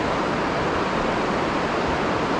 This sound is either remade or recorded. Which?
recorded